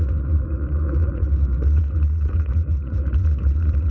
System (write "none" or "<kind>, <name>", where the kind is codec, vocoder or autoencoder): vocoder, Vocos